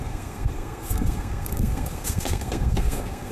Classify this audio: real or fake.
fake